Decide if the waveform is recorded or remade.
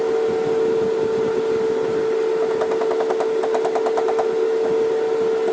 recorded